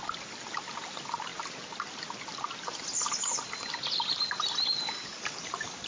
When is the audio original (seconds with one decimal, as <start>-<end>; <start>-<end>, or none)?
1.3-4.8